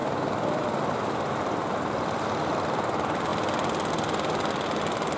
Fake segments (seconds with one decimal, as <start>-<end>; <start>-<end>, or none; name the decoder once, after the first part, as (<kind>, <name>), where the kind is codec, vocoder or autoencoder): none